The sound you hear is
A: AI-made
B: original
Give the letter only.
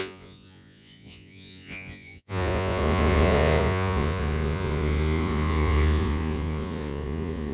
A